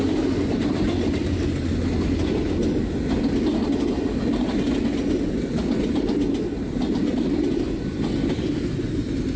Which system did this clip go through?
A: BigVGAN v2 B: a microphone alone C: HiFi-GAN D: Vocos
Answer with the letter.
B